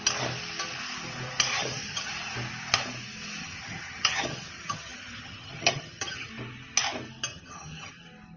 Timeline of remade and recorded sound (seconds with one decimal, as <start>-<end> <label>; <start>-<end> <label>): 0.0-1.5 recorded; 1.5-2.1 remade; 2.1-3.4 recorded; 3.4-6.3 remade; 6.3-7.3 recorded; 7.3-7.9 remade; 7.9-8.4 recorded